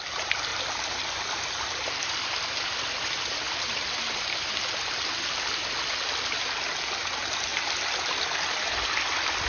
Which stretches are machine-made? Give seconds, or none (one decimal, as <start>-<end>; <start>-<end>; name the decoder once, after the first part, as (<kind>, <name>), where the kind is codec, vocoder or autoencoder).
none